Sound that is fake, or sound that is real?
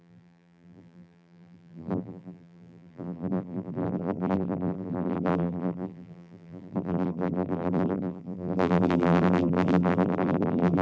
fake